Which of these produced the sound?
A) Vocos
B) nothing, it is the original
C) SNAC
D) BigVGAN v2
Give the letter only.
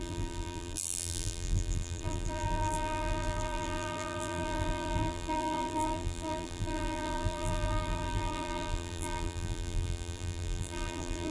D